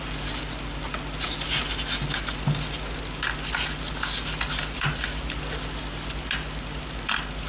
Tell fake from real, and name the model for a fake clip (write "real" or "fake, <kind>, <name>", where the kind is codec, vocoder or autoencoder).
real